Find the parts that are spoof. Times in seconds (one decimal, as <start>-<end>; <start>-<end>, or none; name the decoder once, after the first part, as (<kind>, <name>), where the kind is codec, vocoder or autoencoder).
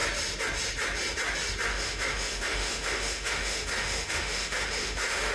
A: 1.7-5.3 (autoencoder, DAC-VAE)